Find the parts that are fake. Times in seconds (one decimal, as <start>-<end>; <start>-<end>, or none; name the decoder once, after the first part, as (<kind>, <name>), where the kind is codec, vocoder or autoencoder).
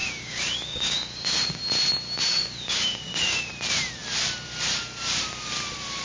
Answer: 0.0-1.6 (codec, DAC); 2.3-3.5